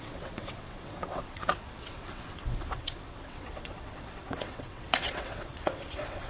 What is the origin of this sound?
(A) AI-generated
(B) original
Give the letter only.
A